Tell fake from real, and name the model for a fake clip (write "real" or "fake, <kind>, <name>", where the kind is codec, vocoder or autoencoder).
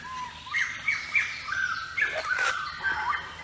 real